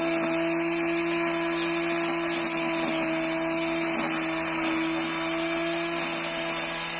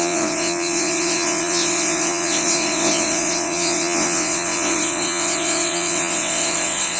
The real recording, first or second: first